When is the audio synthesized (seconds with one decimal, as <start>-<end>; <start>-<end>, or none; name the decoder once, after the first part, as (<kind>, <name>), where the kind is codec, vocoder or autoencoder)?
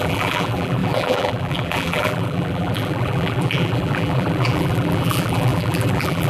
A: 0.0-6.3 (vocoder, BigVGAN v2)